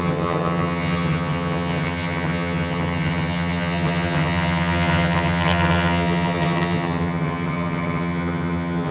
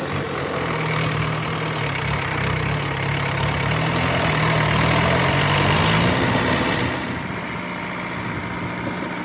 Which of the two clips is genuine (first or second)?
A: second